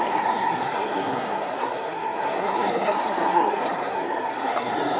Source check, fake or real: fake